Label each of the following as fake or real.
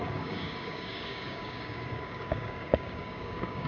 fake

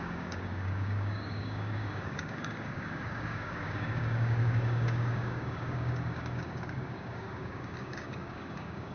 fake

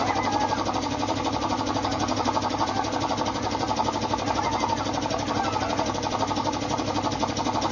real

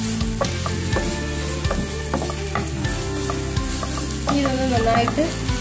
real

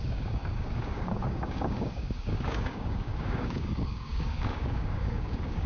fake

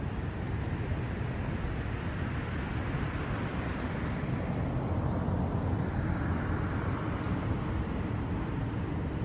real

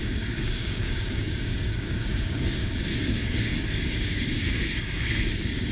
fake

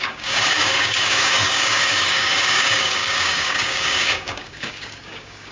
fake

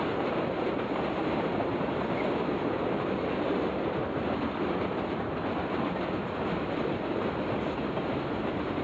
real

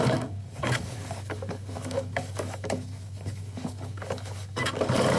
fake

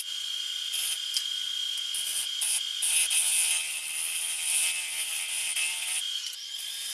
real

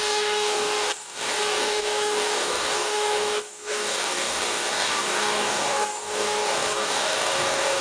fake